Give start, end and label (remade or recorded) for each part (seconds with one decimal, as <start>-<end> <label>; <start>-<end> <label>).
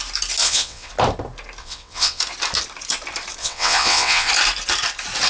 0.0-0.4 recorded; 0.4-0.9 remade; 0.9-1.6 recorded; 1.6-2.2 remade; 2.2-3.4 recorded; 3.4-4.3 remade; 4.3-5.3 recorded